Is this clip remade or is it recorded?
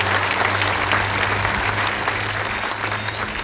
recorded